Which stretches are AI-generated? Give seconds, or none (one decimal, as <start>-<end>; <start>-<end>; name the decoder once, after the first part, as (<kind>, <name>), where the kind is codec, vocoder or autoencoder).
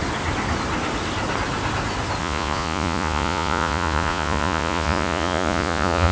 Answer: 2.2-6.1 (vocoder, Vocos)